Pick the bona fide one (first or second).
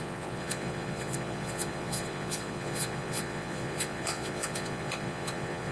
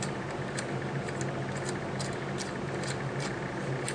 second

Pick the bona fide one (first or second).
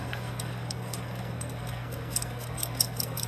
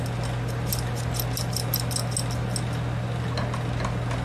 second